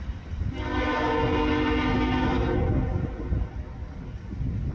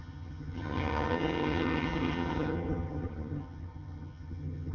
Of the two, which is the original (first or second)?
first